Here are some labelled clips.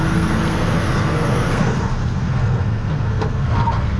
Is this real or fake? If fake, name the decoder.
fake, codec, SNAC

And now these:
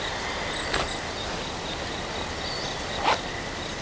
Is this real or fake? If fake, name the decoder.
real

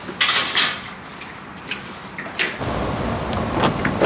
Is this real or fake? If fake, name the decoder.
real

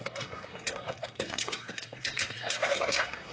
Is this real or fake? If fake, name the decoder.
fake, codec, SNAC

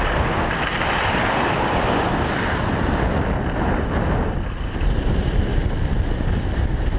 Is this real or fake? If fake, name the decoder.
real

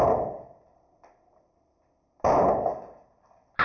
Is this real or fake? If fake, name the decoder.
real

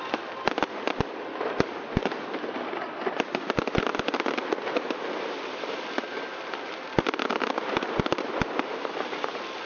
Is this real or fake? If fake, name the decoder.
real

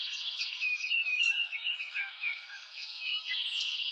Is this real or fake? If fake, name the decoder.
fake, codec, SNAC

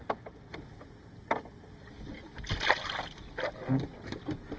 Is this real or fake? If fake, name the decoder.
real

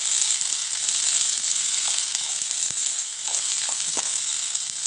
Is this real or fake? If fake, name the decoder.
fake, codec, SNAC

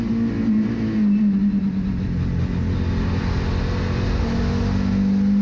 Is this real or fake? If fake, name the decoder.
real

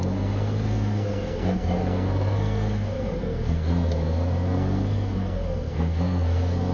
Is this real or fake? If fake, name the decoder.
fake, codec, SNAC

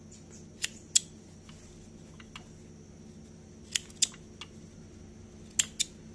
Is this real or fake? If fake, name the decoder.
real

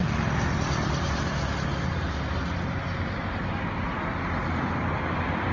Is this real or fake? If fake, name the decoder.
real